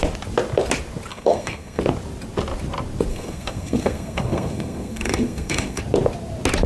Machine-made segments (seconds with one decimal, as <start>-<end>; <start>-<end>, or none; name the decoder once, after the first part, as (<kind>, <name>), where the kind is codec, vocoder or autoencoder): 1.1-1.8 (codec, SNAC); 3.1-5.8